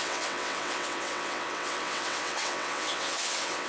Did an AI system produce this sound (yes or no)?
yes